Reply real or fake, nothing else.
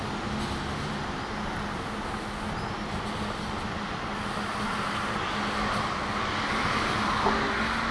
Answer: real